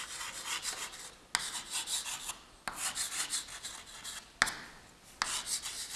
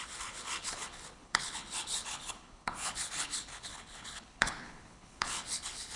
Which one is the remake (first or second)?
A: second